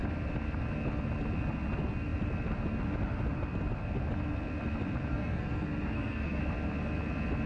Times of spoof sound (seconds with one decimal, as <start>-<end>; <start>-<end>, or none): 5.1-6.4